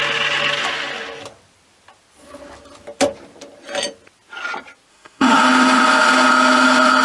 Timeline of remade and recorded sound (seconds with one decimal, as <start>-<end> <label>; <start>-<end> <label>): 0.0-4.9 recorded; 4.9-5.4 remade; 5.4-7.0 recorded